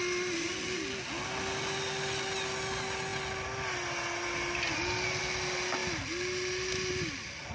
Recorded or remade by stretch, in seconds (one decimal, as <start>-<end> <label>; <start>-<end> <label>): 0.0-7.5 recorded